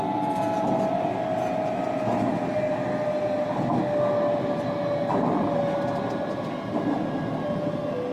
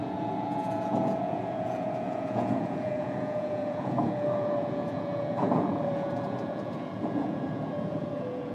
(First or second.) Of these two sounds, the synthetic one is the second